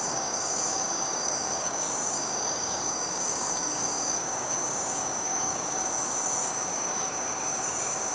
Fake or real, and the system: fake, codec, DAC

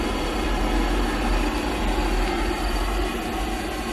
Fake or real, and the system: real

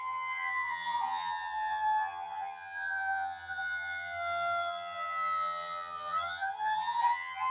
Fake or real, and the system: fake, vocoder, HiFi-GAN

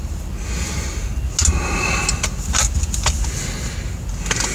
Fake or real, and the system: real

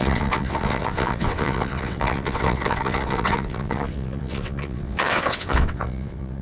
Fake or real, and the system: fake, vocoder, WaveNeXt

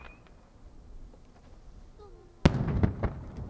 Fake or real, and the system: real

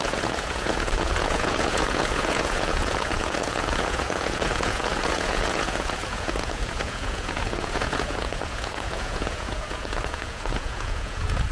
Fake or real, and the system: fake, vocoder, Vocos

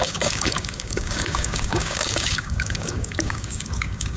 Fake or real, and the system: fake, codec, DAC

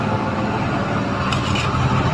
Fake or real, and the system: real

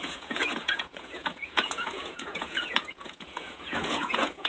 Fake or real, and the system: fake, vocoder, Vocos